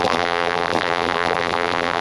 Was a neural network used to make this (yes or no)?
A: yes